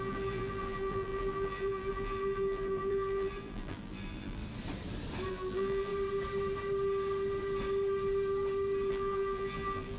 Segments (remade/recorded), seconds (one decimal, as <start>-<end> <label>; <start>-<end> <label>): 0.0-4.4 remade; 4.4-5.3 recorded; 5.3-5.9 remade; 5.9-8.9 recorded; 8.9-10.0 remade